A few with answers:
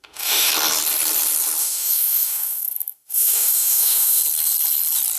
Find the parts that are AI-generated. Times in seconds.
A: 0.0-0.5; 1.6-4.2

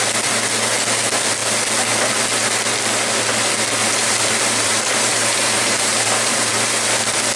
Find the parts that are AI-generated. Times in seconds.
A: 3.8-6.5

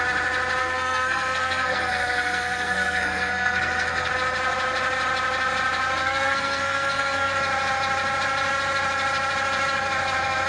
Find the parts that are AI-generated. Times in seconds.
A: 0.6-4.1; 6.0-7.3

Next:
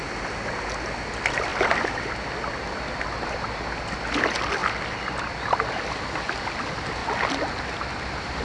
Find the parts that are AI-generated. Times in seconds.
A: 1.5-3.0

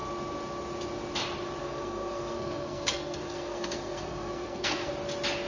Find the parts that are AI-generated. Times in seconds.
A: 1.6-4.9

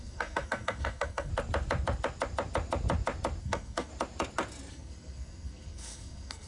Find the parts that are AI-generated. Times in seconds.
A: 0.0-1.3; 3.4-3.9; 4.7-6.5

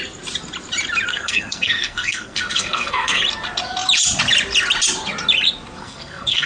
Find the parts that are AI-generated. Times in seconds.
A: 1.1-3.2; 5.8-6.5